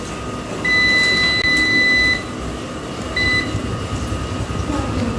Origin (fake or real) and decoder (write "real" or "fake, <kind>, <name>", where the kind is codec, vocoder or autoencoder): real